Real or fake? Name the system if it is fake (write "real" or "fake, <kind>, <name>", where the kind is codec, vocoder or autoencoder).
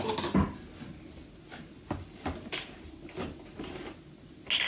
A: real